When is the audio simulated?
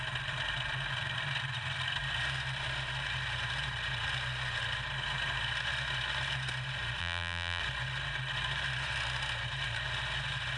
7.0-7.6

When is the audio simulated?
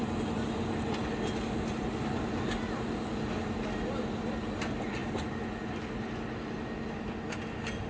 none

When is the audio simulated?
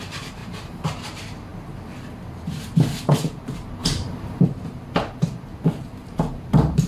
0.0-1.5; 3.4-6.9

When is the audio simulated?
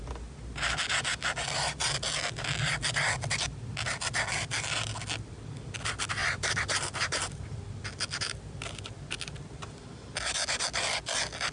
6.2-7.6